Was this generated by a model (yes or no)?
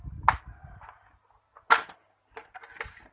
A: no